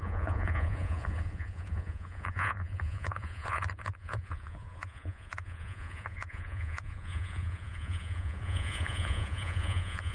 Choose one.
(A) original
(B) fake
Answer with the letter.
B